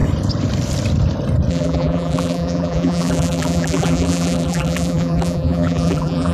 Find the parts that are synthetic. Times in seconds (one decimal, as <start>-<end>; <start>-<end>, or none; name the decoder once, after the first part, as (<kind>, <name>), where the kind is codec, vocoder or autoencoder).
1.5-6.3 (vocoder, BigVGAN v2)